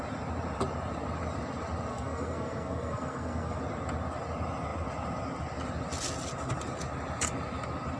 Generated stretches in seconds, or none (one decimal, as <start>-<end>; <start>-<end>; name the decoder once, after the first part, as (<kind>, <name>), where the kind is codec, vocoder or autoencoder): 1.9-3.6 (codec, SNAC)